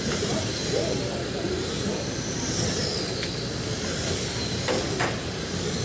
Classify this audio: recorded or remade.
recorded